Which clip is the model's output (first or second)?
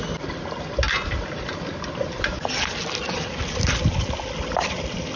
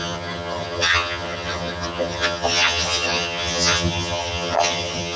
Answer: second